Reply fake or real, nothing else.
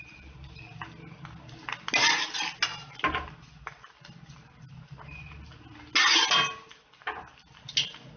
real